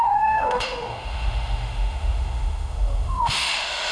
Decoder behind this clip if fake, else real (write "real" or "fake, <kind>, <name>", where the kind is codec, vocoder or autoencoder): fake, autoencoder, DAC-VAE